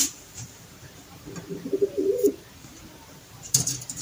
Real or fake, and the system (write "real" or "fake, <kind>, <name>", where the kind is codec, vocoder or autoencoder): fake, vocoder, BigVGAN v2